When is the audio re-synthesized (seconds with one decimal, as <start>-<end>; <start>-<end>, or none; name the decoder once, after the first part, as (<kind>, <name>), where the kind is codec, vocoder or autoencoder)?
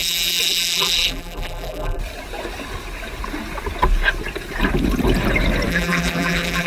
0.0-2.0 (vocoder, BigVGAN v2); 5.7-6.7